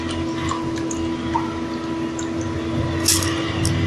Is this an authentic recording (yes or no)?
yes